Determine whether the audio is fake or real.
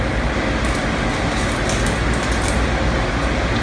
real